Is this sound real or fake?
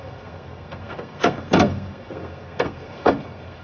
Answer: fake